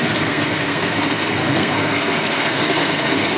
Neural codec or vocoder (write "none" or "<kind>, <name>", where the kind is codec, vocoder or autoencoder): codec, SNAC